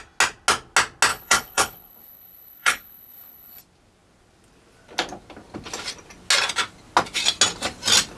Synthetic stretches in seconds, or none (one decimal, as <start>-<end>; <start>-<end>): 1.1-3.6